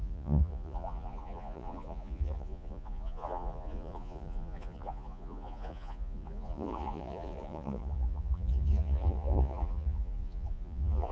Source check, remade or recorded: remade